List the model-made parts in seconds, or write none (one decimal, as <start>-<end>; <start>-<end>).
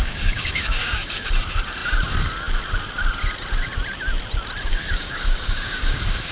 0.0-1.3; 4.7-6.3